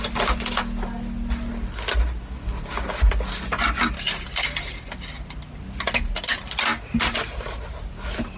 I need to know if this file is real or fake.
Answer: real